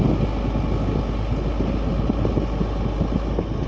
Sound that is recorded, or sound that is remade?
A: recorded